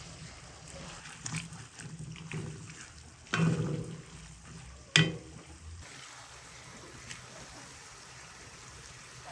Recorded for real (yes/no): yes